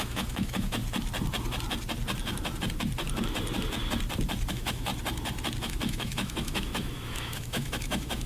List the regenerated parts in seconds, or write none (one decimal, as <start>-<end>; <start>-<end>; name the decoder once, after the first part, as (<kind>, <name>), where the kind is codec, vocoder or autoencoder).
0.0-0.8 (autoencoder, DAC-VAE); 4.5-4.9; 5.6-8.3